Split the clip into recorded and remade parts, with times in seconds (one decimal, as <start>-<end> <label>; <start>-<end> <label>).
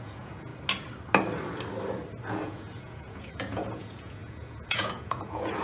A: 0.0-0.5 remade; 0.5-2.3 recorded; 2.3-5.6 remade